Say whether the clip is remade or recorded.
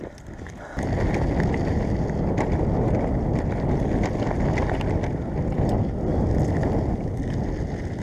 recorded